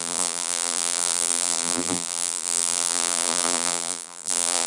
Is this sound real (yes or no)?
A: no